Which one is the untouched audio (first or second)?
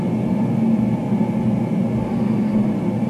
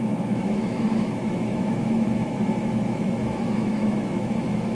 first